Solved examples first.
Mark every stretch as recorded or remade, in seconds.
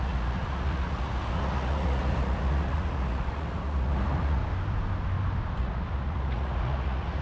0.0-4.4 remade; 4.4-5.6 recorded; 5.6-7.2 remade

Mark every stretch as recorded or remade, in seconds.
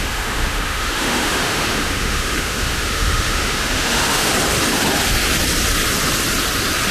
0.0-4.3 remade; 4.3-6.9 recorded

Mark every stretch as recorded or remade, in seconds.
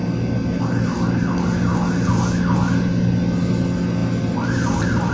0.0-5.1 recorded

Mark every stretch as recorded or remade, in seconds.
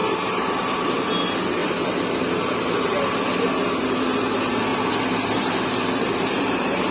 0.0-0.9 remade; 0.9-1.6 recorded; 1.6-3.4 remade; 3.4-4.7 recorded; 4.7-6.9 remade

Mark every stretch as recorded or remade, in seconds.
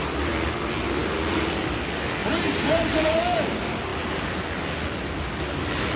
0.0-2.2 recorded; 2.2-2.8 remade; 2.8-6.0 recorded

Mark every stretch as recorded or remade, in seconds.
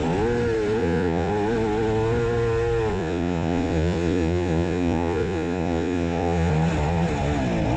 0.0-0.8 recorded; 0.8-1.3 remade; 1.3-2.9 recorded; 2.9-6.5 remade; 6.5-7.8 recorded